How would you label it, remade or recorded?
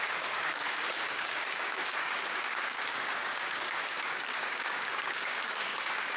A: remade